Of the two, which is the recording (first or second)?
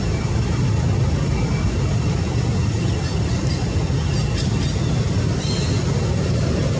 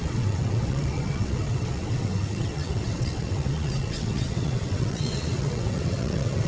first